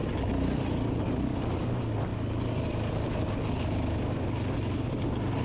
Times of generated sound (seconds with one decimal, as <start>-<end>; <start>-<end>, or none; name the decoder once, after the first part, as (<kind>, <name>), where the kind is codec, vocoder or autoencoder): none